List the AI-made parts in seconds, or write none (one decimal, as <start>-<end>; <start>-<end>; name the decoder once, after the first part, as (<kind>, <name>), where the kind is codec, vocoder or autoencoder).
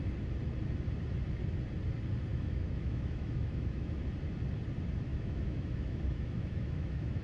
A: 2.3-4.0 (autoencoder, DAC-VAE); 5.1-7.2